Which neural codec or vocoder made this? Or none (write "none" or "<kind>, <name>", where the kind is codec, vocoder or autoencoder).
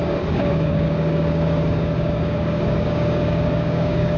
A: codec, DAC